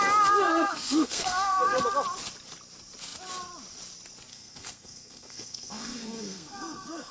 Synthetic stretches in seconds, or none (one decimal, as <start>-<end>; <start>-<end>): 0.4-1.8; 4.3-7.1